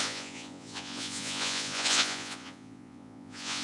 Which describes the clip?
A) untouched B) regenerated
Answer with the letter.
B